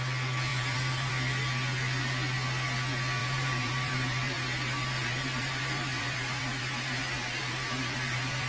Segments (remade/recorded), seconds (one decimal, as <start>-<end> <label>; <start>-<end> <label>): 0.0-0.5 recorded; 0.5-1.1 remade; 1.1-3.2 recorded; 3.2-8.5 remade